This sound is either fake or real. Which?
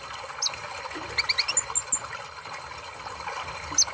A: real